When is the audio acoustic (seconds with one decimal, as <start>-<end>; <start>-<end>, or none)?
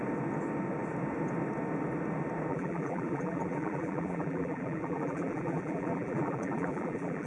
0.0-2.5